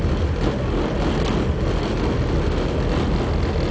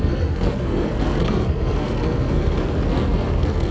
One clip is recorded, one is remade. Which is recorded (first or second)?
first